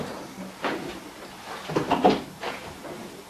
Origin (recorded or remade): recorded